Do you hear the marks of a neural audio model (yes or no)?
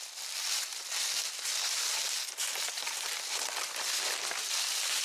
no